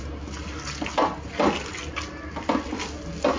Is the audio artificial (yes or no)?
no